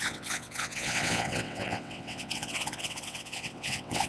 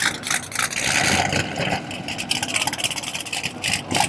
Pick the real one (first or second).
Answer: second